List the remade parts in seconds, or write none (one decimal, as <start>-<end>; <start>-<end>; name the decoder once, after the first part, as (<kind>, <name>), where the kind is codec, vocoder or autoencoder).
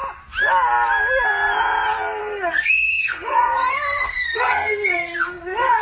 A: 2.2-5.8 (codec, SNAC)